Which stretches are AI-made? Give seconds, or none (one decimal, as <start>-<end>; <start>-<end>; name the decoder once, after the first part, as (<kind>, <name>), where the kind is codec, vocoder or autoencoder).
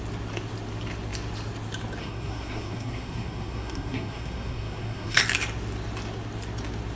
2.0-5.2 (codec, SNAC)